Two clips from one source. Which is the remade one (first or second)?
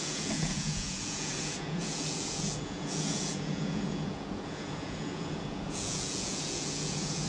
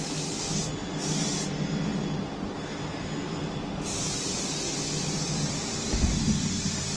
first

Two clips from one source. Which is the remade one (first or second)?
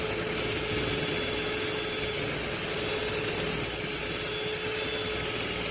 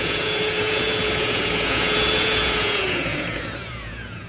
second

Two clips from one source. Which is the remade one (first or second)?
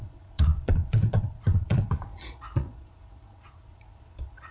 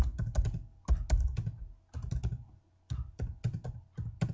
first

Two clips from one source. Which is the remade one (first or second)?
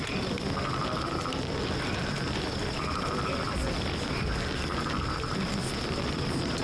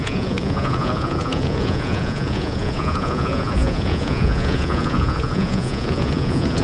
second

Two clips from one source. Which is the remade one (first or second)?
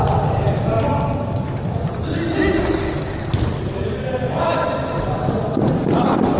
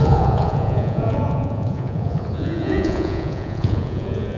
second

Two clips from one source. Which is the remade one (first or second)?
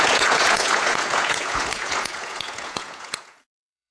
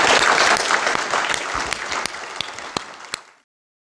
first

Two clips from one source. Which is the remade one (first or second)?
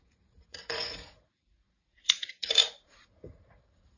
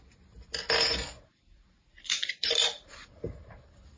first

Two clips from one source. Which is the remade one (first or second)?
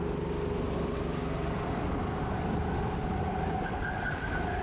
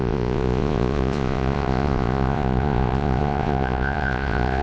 second